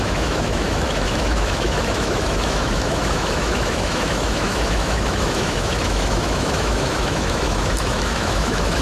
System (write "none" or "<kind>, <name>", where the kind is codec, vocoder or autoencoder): autoencoder, DAC-VAE